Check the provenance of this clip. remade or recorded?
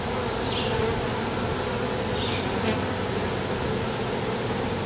recorded